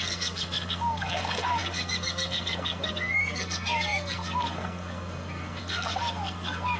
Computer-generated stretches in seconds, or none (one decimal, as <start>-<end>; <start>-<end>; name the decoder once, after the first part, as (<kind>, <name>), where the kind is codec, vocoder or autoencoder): 0.0-6.8 (codec, SNAC)